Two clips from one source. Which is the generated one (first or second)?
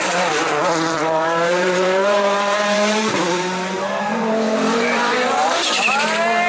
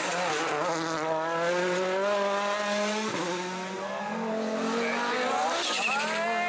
first